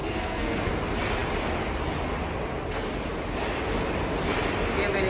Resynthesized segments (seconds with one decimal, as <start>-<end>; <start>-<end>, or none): 0.0-0.7

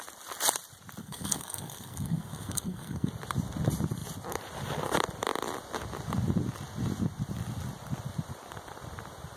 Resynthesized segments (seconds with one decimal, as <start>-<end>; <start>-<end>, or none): 1.0-3.1

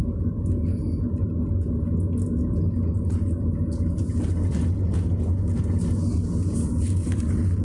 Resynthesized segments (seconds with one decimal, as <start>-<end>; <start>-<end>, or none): none